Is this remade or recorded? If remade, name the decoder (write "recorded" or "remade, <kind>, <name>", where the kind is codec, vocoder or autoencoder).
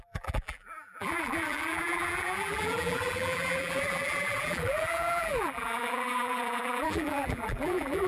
remade, vocoder, BigVGAN v2